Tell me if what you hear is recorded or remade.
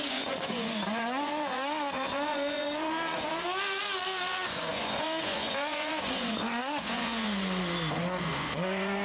remade